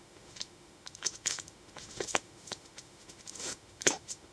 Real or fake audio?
fake